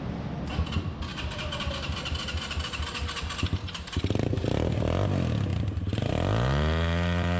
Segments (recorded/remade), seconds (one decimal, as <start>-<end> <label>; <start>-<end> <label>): 0.0-1.1 recorded; 1.1-4.0 remade; 4.0-5.5 recorded; 5.5-6.1 remade; 6.1-7.4 recorded